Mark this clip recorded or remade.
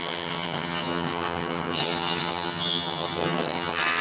remade